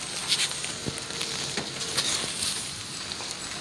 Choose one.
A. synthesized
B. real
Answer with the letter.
B